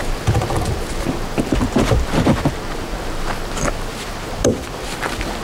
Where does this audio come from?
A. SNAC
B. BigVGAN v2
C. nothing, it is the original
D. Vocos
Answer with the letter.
C